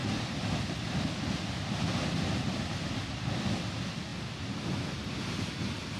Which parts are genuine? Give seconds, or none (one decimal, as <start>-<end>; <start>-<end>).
0.0-6.0